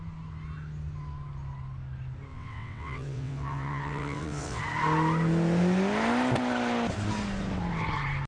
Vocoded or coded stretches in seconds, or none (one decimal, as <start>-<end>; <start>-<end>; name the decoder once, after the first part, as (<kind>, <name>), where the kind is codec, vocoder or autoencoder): 2.3-4.6 (vocoder, WaveNeXt)